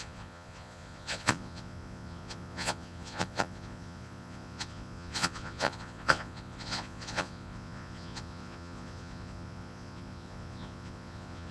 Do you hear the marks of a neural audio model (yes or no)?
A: yes